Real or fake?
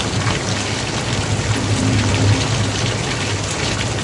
real